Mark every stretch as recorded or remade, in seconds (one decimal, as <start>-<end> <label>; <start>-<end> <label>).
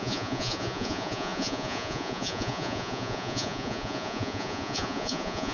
0.0-5.5 remade